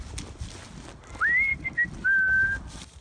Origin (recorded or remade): recorded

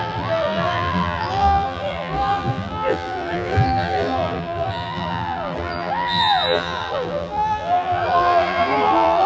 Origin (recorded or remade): remade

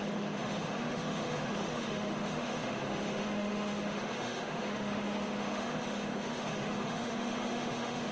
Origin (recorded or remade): remade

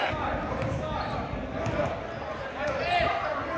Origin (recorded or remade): recorded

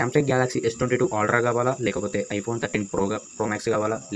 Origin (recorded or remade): recorded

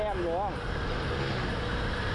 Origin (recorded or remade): recorded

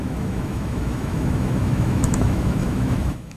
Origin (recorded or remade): remade